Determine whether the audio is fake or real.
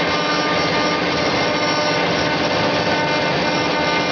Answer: real